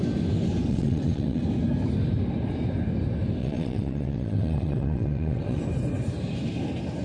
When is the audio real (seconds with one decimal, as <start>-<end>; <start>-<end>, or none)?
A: 0.0-0.7; 1.4-3.4; 5.6-7.0

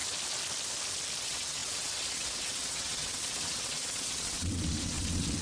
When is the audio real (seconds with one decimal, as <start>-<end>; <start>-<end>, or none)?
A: 0.0-1.2